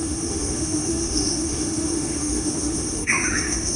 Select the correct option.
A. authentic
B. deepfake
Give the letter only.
B